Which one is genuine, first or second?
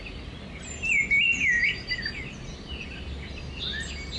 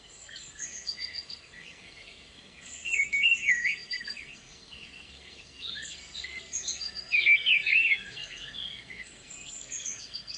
first